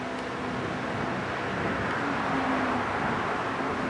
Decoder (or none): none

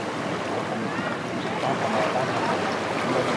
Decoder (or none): none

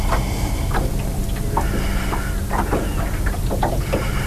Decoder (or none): none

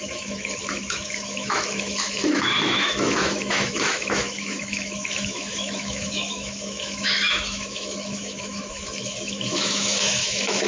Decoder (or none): autoencoder, DAC-VAE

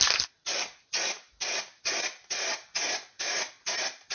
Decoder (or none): none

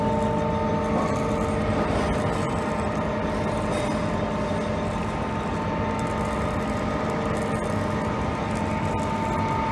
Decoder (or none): none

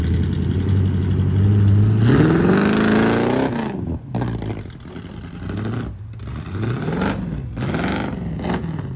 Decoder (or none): none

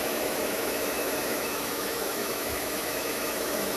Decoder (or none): autoencoder, DAC-VAE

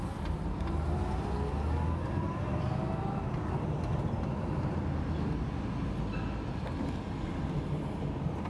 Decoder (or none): none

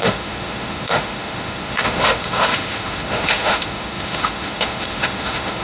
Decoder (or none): autoencoder, DAC-VAE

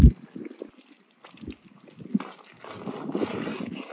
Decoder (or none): none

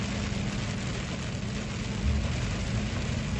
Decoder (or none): none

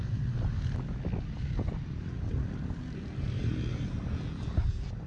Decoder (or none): none